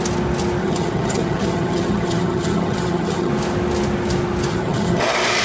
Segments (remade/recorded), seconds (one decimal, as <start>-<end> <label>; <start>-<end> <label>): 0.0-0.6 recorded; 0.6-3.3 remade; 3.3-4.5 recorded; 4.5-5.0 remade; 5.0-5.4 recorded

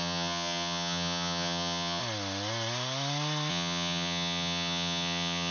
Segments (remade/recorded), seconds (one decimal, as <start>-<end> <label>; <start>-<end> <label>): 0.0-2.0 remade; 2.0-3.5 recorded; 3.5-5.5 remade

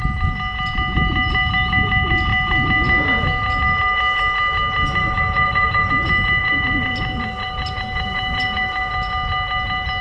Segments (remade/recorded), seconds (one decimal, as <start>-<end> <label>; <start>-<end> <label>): 0.0-5.0 recorded; 5.0-5.9 remade; 5.9-6.4 recorded; 6.4-8.9 remade; 8.9-10.0 recorded